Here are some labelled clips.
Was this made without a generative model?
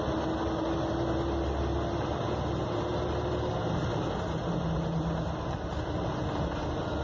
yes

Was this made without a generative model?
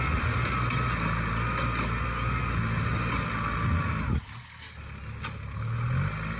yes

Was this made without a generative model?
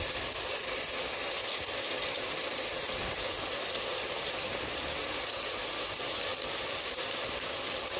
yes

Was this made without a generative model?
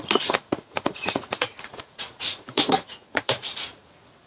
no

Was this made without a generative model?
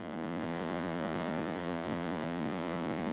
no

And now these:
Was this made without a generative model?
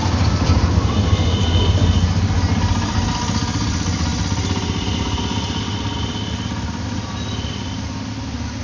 yes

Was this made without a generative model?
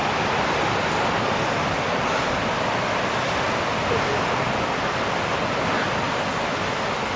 yes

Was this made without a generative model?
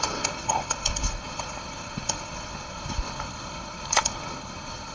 no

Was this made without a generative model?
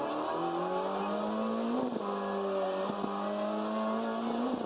yes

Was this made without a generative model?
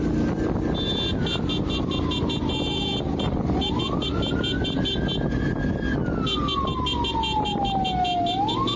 yes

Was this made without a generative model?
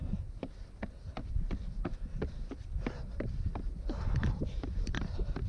yes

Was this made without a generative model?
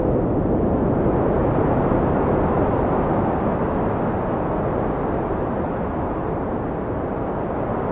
yes